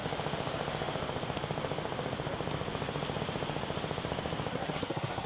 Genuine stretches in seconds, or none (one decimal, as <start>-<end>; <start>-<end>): 0.0-4.5